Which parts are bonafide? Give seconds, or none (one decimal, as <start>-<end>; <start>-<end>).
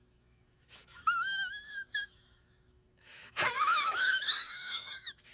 none